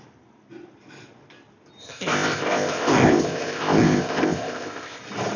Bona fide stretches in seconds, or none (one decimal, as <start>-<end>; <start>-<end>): 0.0-1.8; 5.0-5.4